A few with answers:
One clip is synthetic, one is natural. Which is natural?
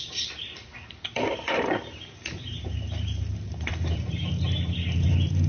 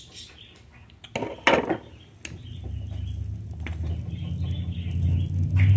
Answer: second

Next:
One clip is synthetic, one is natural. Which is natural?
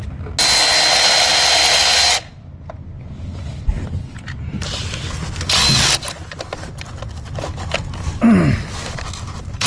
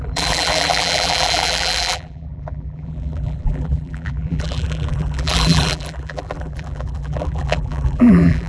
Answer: first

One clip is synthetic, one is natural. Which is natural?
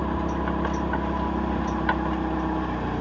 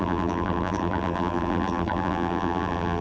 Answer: first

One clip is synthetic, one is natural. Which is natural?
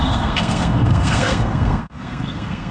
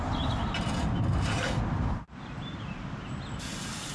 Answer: second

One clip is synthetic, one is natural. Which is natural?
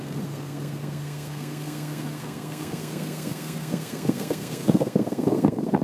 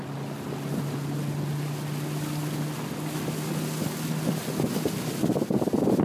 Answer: second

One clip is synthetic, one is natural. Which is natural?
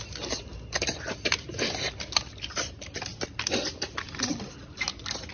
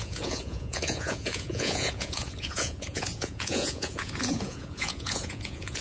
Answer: first